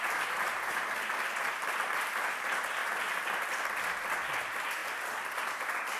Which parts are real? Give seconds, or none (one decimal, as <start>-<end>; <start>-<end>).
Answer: 0.0-6.0